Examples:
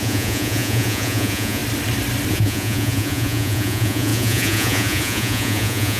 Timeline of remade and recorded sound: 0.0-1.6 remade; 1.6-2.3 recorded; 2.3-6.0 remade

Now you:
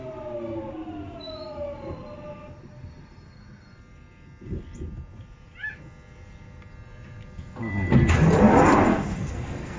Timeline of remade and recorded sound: 0.0-8.9 recorded; 8.9-9.8 remade

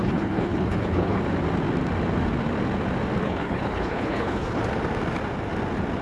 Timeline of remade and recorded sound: 0.0-1.2 remade; 1.2-3.2 recorded; 3.2-4.6 remade; 4.6-6.0 recorded

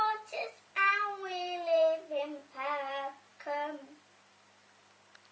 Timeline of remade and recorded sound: 0.0-2.4 remade; 2.4-2.9 recorded; 2.9-5.3 remade

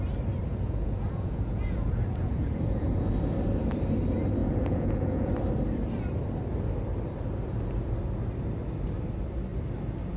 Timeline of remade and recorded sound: 0.0-0.5 recorded; 0.5-3.1 remade; 3.1-4.4 recorded; 4.4-5.3 remade; 5.3-10.2 recorded

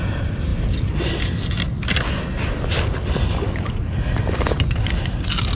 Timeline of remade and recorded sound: 0.0-5.5 recorded

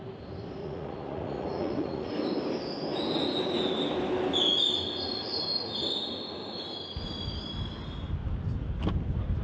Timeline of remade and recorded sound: 0.0-0.6 recorded; 0.6-2.1 remade; 2.1-9.4 recorded

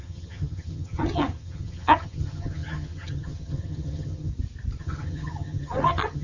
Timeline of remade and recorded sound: 0.0-4.3 remade; 4.3-4.8 recorded; 4.8-6.2 remade